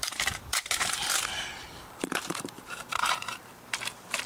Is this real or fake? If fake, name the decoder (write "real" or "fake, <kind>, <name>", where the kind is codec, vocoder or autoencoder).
fake, vocoder, BigVGAN v2